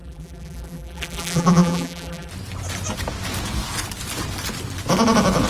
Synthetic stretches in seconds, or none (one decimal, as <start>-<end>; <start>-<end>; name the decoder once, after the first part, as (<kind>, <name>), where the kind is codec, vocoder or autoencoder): 0.0-2.3 (vocoder, BigVGAN v2)